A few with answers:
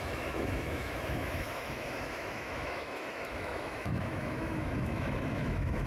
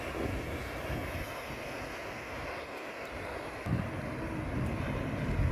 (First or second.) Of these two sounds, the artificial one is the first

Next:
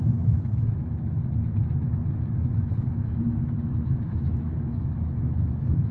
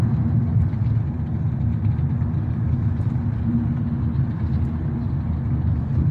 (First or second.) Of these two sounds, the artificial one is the first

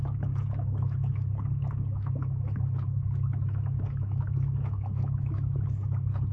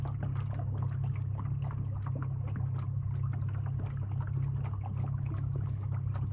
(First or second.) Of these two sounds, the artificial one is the first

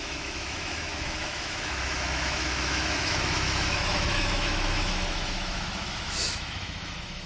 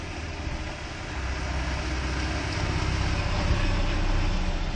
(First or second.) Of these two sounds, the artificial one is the first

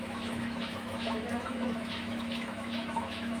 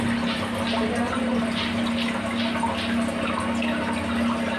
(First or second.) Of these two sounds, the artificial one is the first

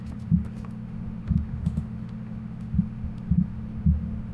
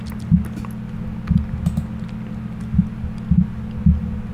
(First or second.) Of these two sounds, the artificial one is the first